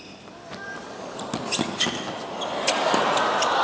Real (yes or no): yes